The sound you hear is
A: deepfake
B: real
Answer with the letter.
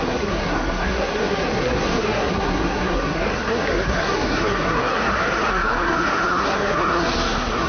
A